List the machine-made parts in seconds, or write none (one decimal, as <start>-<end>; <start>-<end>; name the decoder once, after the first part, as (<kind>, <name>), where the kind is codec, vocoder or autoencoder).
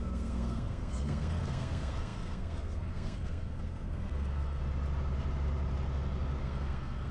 0.0-4.6 (codec, SNAC); 6.4-7.1